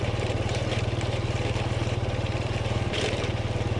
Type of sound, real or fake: fake